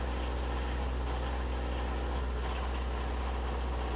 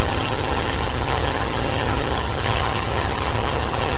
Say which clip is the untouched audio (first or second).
first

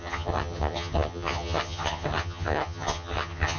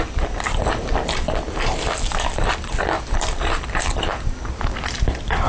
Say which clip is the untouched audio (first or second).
second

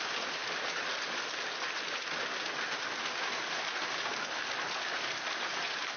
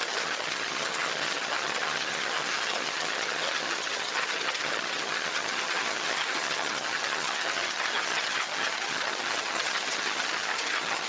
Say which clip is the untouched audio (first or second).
first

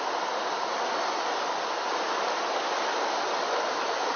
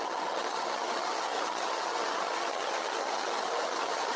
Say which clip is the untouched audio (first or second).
first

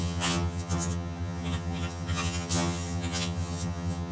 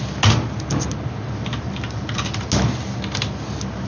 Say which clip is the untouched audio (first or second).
second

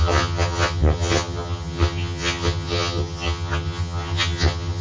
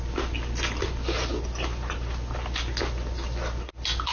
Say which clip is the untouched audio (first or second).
second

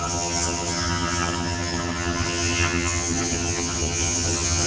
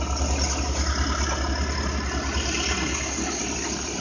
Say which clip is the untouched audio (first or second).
second